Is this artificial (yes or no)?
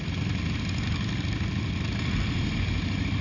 no